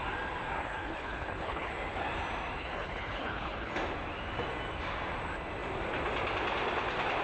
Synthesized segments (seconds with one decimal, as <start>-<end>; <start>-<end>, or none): 0.6-1.7; 2.6-3.7